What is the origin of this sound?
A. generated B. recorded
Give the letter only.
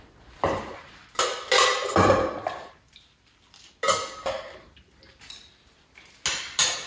B